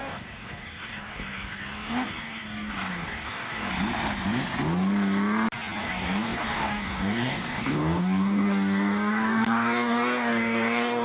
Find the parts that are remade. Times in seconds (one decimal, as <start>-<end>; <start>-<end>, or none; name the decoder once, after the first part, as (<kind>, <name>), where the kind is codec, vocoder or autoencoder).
0.0-3.7 (codec, DAC); 5.8-11.0